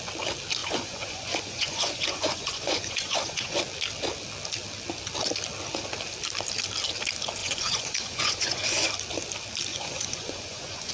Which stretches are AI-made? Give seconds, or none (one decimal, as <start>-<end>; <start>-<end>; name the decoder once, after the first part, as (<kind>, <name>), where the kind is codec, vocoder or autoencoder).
0.6-3.6 (vocoder, Vocos); 7.4-8.9; 9.7-10.9

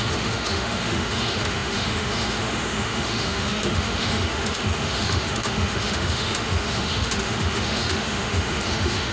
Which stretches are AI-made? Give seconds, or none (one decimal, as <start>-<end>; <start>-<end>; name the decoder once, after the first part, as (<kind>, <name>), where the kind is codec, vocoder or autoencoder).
0.0-9.1 (autoencoder, DAC-VAE)

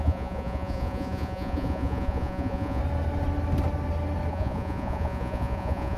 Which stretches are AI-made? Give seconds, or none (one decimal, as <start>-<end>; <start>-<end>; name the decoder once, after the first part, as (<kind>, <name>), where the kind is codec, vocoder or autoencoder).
0.0-2.8 (vocoder, Vocos); 4.3-6.0

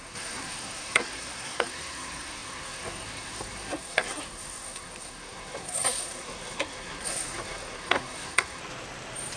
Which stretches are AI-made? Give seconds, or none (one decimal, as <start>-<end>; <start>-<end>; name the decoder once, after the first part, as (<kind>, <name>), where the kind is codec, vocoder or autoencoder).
0.0-8.6 (codec, SNAC)

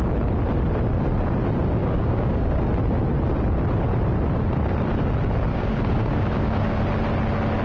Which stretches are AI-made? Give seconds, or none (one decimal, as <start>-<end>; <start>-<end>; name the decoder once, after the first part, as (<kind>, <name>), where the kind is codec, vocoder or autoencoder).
1.8-2.6 (codec, DAC); 5.5-6.8

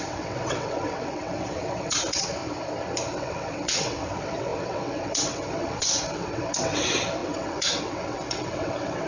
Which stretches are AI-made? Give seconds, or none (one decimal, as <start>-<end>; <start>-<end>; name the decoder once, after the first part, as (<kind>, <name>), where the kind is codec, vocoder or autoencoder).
0.0-2.4 (vocoder, WaveNeXt); 3.1-9.1